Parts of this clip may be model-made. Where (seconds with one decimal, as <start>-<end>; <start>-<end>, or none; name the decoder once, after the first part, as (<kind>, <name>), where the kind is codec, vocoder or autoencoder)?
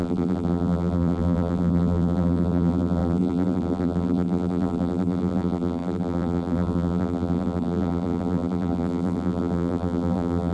0.0-10.5 (vocoder, BigVGAN v2)